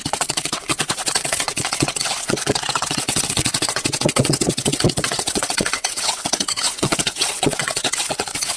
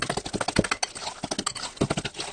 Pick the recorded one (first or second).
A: second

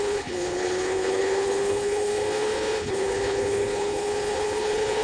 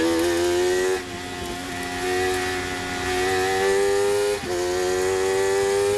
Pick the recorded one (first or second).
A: second